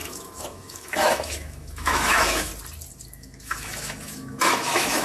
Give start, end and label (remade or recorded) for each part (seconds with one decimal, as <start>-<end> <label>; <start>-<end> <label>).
0.0-2.5 remade; 2.5-3.1 recorded; 3.1-5.0 remade